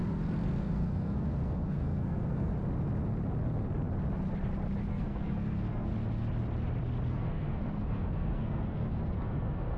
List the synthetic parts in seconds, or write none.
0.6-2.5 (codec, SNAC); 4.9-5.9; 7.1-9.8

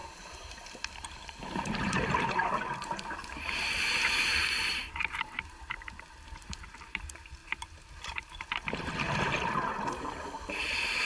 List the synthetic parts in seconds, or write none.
0.0-8.6 (vocoder, BigVGAN v2); 10.0-11.1

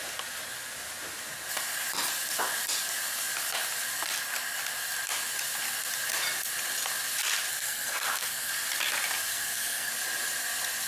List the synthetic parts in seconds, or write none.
7.5-8.5 (codec, SNAC); 9.3-9.9

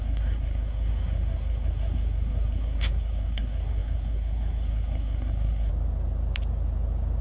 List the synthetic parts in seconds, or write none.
0.0-5.7 (codec, SNAC)

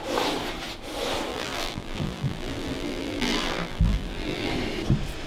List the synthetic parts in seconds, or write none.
1.3-4.5 (vocoder, BigVGAN v2)

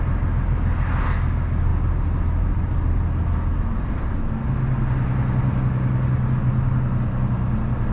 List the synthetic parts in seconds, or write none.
none

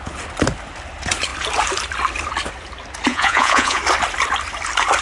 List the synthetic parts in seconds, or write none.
3.1-3.8 (vocoder, Vocos)